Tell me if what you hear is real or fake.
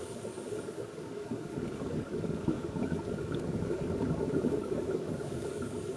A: fake